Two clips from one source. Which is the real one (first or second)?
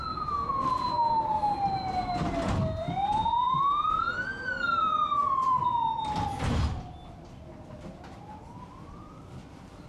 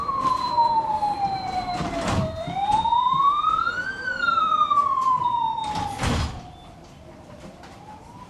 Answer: first